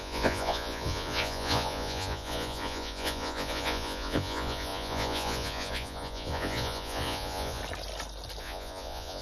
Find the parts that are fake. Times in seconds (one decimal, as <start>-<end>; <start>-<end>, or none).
0.0-7.6; 8.4-9.2